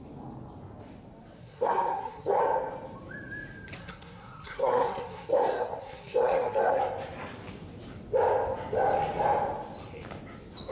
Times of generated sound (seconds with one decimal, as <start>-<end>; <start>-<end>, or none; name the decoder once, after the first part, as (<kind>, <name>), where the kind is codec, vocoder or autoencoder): 1.4-2.4 (codec, SNAC); 3.8-6.8